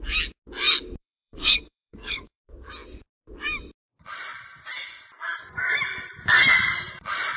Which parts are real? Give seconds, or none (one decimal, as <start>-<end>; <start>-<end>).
0.0-1.0; 2.4-7.4